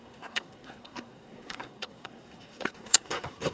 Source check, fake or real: fake